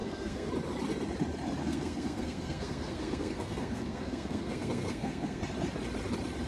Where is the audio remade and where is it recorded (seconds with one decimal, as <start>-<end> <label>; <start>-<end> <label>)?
0.0-0.5 remade; 0.5-1.6 recorded; 1.6-5.4 remade; 5.4-6.5 recorded